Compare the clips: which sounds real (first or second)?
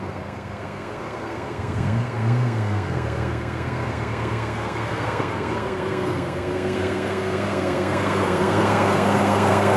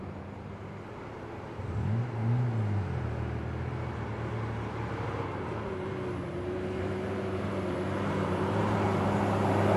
second